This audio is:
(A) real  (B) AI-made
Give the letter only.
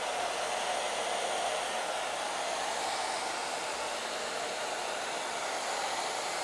A